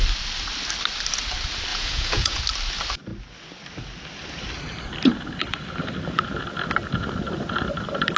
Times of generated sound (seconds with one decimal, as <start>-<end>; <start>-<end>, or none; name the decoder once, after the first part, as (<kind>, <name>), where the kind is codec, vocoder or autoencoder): 1.7-2.4 (vocoder, Vocos)